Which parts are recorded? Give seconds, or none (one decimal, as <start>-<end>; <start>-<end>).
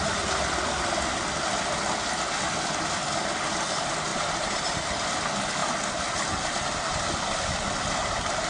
0.0-4.1; 4.8-8.5